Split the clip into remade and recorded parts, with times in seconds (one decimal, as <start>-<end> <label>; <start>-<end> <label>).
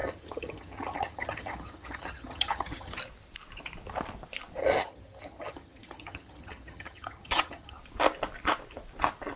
0.0-3.0 remade; 3.0-4.6 recorded; 4.6-7.8 remade; 7.8-9.4 recorded